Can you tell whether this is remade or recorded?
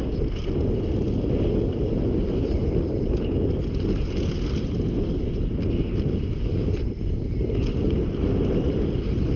recorded